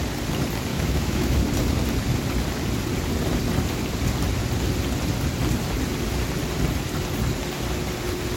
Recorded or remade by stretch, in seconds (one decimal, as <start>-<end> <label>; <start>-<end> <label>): 0.0-0.7 recorded; 0.7-1.4 remade; 1.4-8.4 recorded